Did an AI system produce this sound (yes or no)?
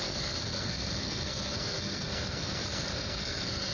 yes